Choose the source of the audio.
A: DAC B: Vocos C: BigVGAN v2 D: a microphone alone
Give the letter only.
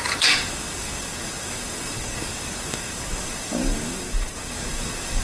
A